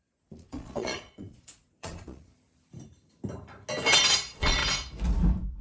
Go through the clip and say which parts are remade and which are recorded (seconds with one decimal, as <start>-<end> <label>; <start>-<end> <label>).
0.0-2.3 remade; 2.3-4.0 recorded; 4.0-4.6 remade; 4.6-5.6 recorded